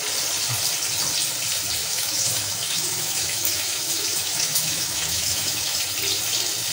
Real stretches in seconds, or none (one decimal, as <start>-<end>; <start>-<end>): 0.0-1.8; 5.8-6.7